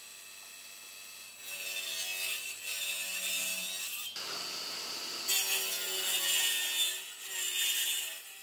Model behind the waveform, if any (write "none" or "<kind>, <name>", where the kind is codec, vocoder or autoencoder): none